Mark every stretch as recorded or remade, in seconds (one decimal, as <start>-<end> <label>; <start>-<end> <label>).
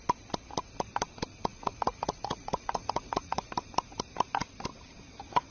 0.0-1.5 recorded; 1.5-3.5 remade; 3.5-5.5 recorded